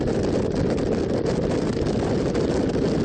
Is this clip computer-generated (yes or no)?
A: no